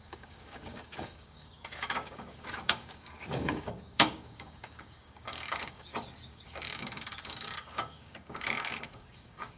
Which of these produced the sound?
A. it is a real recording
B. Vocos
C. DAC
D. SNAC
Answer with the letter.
C